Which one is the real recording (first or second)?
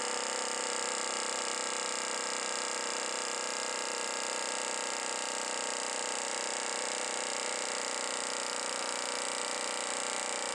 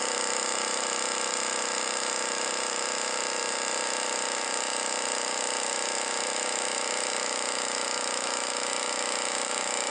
first